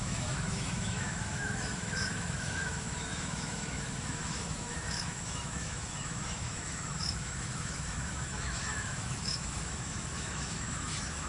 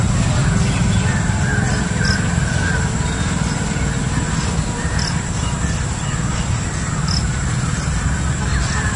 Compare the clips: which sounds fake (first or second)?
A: first